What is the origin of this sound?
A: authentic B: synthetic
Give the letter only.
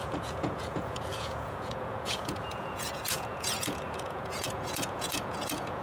B